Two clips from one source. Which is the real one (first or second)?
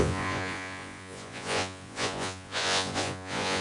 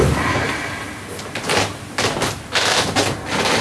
second